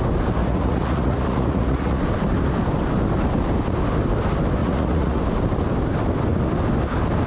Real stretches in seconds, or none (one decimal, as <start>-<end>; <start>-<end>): 0.0-0.4; 2.0-4.6; 5.2-7.3